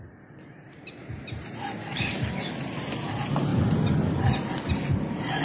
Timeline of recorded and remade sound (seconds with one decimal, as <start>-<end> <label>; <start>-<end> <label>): 0.0-1.8 recorded; 1.8-2.5 remade; 2.5-5.4 recorded